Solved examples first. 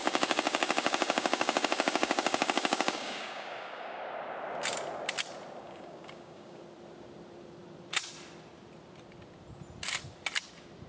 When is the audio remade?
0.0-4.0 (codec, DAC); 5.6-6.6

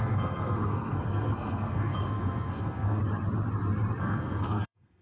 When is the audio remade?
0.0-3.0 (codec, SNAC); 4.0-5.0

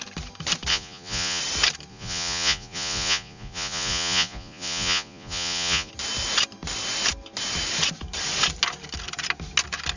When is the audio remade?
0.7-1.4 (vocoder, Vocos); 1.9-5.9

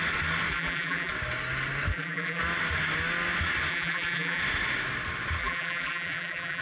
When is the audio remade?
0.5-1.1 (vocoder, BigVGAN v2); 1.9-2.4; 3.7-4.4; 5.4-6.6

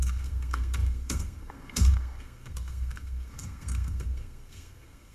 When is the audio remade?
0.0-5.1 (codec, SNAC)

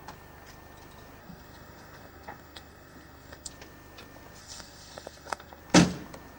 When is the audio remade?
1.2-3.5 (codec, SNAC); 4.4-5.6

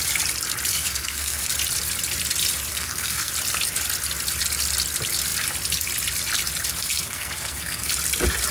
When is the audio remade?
0.7-1.5 (codec, SNAC); 2.7-3.3; 6.8-7.9